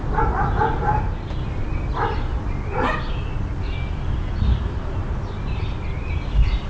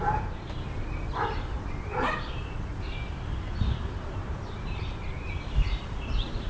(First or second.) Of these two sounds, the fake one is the second